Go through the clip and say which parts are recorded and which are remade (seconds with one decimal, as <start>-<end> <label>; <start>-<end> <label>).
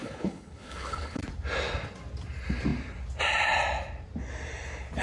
0.0-1.2 remade; 1.2-5.0 recorded